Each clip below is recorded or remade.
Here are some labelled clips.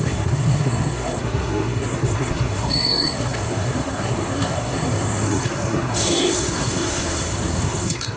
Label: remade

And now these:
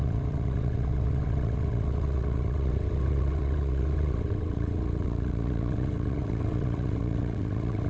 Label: remade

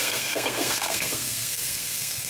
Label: remade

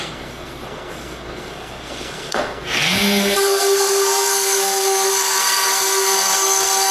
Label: remade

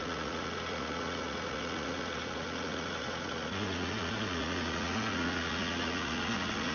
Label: remade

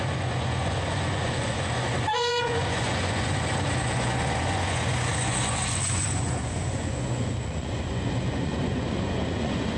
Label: remade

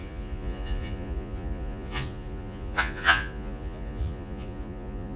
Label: remade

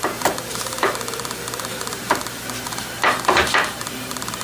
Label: remade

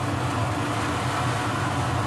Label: recorded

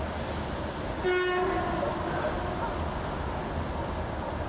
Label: recorded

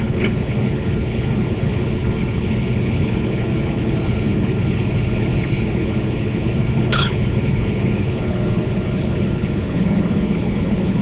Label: remade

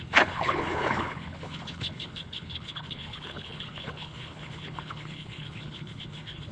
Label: remade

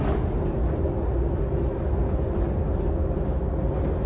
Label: recorded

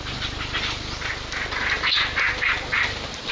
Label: recorded